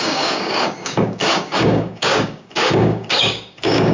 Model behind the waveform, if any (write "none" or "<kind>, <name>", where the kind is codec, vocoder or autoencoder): codec, DAC